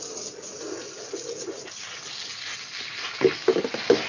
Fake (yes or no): no